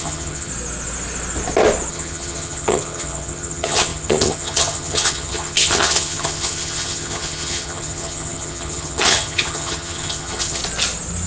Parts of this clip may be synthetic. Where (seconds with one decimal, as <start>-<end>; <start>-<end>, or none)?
0.0-0.5; 1.9-10.6